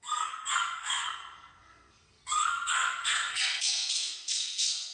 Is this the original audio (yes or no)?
no